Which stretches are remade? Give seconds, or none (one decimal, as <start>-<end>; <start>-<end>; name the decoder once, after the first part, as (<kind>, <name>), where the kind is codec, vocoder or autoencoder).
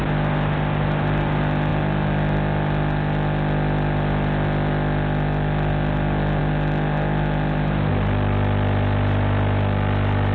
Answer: none